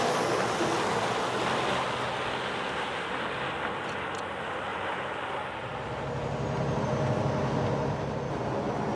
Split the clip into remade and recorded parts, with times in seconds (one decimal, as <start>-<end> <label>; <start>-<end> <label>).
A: 0.0-9.0 recorded